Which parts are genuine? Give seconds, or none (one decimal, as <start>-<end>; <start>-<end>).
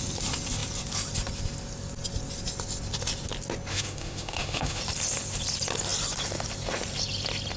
0.0-3.7; 4.8-7.6